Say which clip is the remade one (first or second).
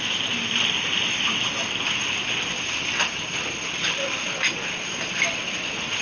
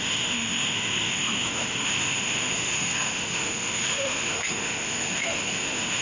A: second